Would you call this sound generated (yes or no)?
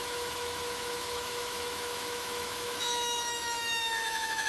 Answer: yes